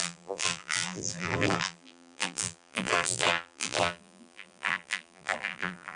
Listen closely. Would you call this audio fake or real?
fake